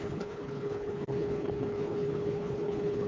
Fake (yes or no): yes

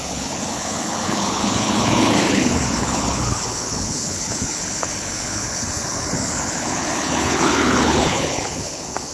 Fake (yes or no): yes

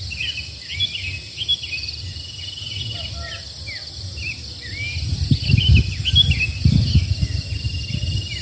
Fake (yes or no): no